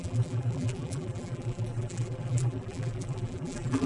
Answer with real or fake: fake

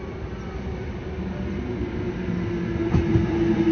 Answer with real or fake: real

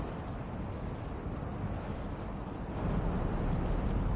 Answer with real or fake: real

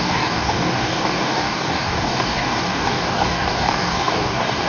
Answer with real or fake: fake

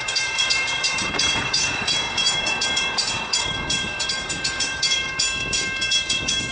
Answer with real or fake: fake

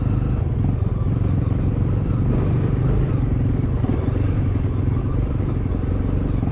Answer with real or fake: real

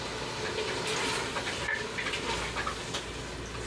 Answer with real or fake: real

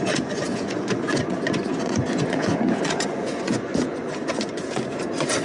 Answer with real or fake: fake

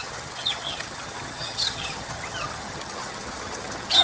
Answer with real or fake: fake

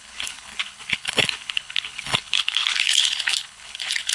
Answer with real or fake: fake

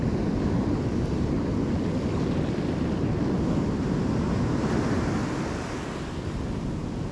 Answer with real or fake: real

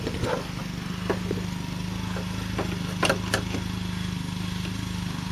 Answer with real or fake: real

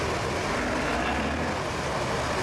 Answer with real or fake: real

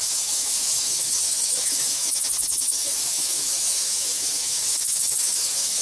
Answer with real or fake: fake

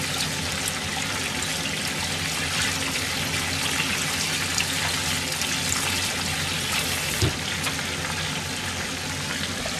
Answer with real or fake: real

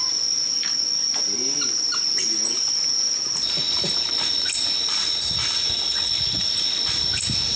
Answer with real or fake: real